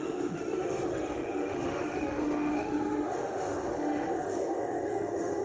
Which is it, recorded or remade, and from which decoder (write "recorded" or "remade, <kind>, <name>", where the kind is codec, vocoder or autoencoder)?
remade, autoencoder, DAC-VAE